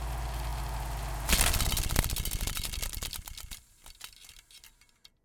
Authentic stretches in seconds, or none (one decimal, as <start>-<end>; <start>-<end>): 0.0-5.2